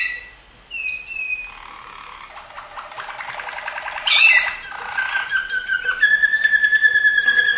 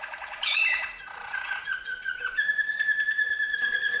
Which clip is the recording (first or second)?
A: first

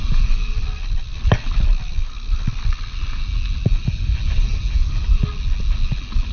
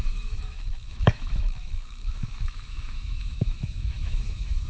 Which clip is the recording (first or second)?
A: first